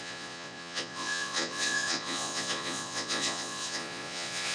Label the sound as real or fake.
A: fake